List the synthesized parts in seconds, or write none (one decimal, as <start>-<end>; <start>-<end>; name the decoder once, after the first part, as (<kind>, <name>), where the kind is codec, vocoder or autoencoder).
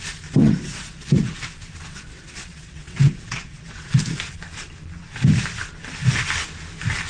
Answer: 0.4-1.3 (vocoder, WaveNeXt); 1.9-3.9